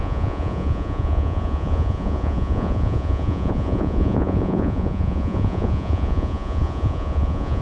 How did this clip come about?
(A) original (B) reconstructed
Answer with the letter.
B